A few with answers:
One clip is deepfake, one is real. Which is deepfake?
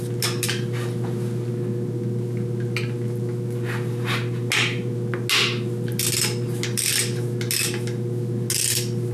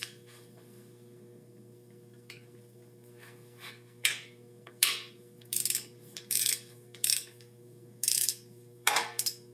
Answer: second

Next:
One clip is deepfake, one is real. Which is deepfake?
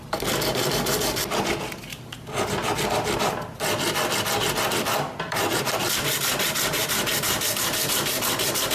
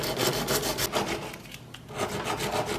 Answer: first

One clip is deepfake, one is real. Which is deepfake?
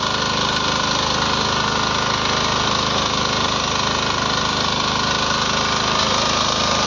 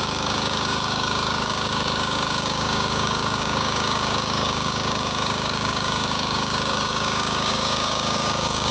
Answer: second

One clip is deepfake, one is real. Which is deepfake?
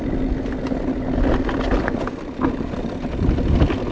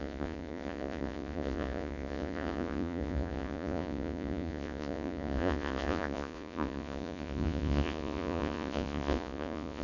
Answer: second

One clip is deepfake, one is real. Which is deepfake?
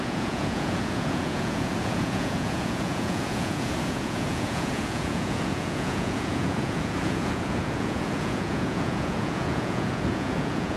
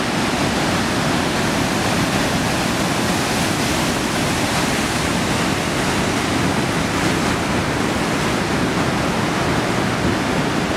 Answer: first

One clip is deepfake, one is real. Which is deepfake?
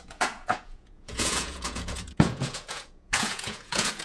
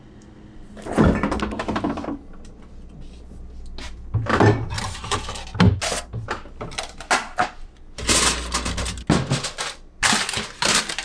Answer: first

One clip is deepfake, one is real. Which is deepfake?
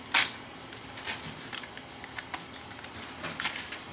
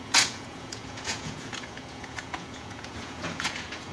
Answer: second